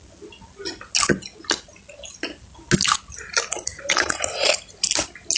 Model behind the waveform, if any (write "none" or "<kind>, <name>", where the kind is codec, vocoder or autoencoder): none